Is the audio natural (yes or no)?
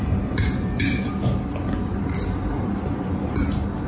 yes